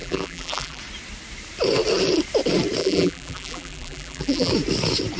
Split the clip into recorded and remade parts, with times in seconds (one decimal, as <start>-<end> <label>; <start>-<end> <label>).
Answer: 0.0-0.8 remade; 0.8-2.8 recorded; 2.8-4.5 remade; 4.5-5.2 recorded